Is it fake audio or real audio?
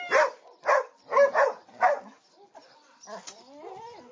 real